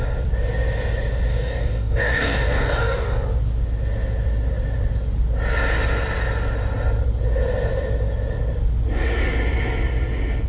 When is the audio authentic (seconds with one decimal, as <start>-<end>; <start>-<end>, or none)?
0.0-1.3; 3.2-10.5